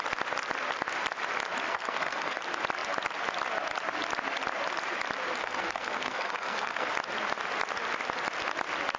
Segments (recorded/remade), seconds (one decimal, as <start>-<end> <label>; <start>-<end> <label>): 0.0-1.7 recorded; 1.7-2.4 remade; 2.4-5.4 recorded; 5.4-6.9 remade; 6.9-9.0 recorded